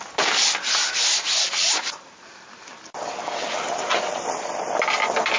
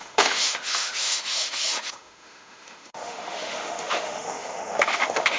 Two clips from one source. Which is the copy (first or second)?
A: second